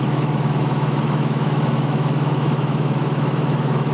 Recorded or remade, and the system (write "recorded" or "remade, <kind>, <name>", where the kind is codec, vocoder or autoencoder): remade, autoencoder, DAC-VAE